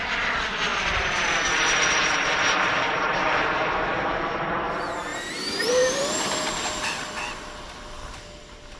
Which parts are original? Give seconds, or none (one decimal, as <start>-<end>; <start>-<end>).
0.0-0.7; 4.0-5.1; 6.5-8.8